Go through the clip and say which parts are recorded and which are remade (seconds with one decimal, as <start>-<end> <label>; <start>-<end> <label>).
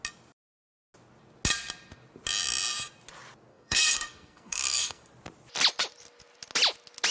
0.0-3.5 recorded; 3.5-5.1 remade; 5.1-7.1 recorded